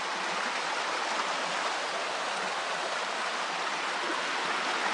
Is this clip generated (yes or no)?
no